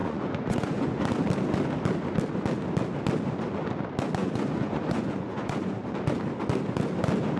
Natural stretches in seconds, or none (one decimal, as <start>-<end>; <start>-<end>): 1.0-4.2; 5.8-7.4